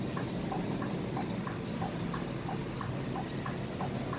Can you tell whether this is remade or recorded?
recorded